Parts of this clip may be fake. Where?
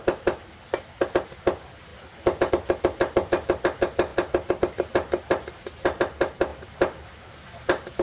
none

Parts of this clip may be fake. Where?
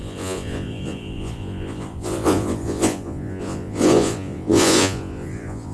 0.0-5.7 (vocoder, Vocos)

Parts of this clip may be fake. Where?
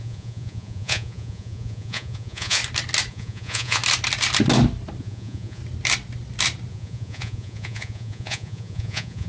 0.0-2.6 (vocoder, Vocos); 3.1-3.8; 5.0-5.6; 6.7-9.3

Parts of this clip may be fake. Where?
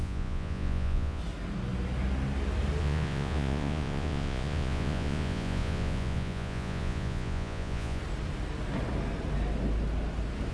0.0-1.2 (vocoder, Vocos); 2.8-8.0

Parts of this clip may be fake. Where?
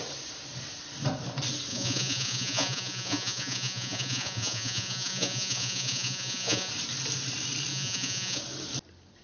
1.7-6.7 (vocoder, Vocos); 7.7-8.4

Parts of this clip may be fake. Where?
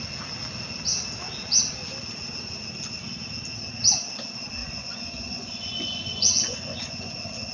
4.6-7.1 (vocoder, Vocos)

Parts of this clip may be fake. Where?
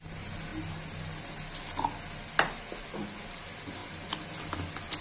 none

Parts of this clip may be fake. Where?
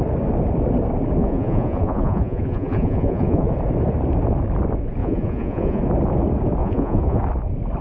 1.2-3.5 (vocoder, Vocos); 5.0-5.8; 6.6-7.2